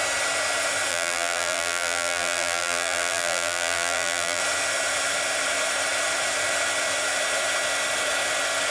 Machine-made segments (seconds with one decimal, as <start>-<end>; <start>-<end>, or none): 0.9-4.4